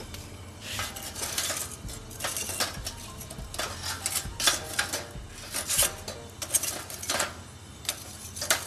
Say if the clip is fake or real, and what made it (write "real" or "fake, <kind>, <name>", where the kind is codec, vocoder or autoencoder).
real